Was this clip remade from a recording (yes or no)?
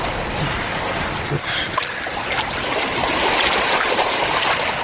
no